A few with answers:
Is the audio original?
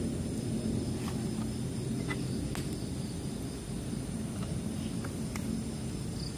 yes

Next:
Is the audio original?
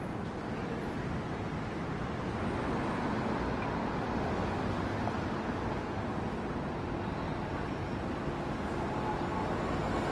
yes